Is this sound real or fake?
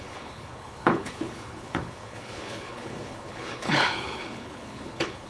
fake